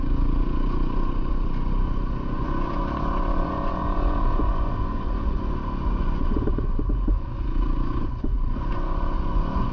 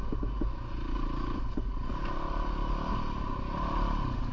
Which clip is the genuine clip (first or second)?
second